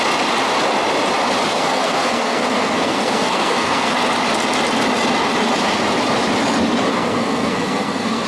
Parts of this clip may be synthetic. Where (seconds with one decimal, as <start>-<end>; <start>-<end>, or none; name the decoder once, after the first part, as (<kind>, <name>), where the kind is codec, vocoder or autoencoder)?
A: 1.5-3.9 (codec, SNAC); 6.9-8.3